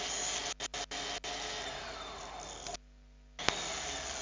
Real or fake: real